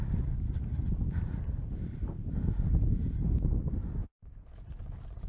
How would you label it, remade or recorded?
recorded